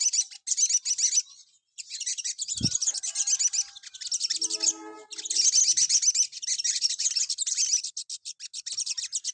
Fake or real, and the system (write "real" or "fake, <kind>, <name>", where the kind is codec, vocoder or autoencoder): real